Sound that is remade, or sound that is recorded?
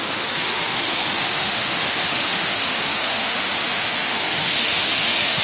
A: remade